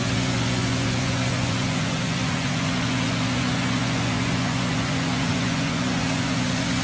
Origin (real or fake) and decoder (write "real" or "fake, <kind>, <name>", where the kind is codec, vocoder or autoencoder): fake, vocoder, Vocos